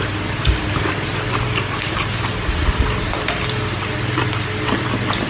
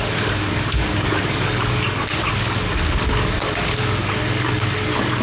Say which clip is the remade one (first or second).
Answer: second